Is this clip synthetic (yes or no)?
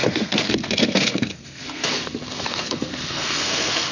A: yes